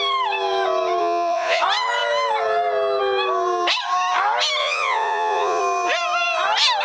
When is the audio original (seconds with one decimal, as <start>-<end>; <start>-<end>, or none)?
0.0-1.0; 1.6-4.6; 5.6-6.8